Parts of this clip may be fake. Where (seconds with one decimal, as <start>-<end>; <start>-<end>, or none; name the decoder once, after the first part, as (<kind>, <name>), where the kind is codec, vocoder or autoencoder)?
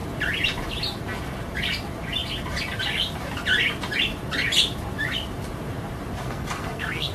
6.2-7.1 (codec, SNAC)